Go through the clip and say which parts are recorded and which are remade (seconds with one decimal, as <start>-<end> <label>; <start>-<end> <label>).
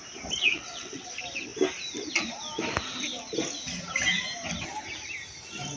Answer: 0.0-0.5 recorded; 0.5-1.1 remade; 1.1-5.8 recorded